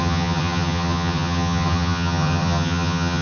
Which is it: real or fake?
fake